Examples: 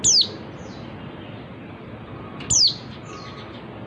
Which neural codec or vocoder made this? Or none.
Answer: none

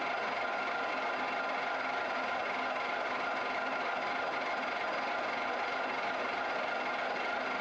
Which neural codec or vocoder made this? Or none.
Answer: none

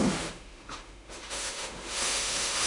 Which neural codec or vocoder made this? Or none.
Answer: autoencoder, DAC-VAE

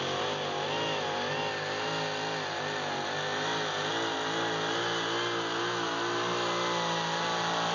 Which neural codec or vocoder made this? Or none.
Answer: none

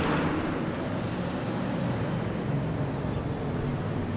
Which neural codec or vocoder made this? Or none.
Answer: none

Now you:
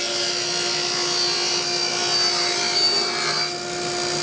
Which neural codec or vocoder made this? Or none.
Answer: none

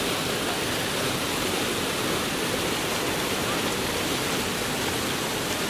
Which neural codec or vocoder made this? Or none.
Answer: none